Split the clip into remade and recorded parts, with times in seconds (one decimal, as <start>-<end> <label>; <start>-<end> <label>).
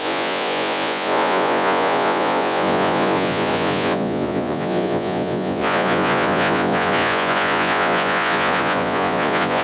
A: 0.0-9.6 remade